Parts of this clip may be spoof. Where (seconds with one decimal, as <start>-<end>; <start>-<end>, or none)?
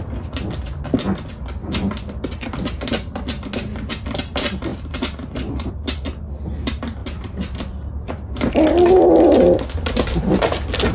4.7-5.7; 7.0-8.5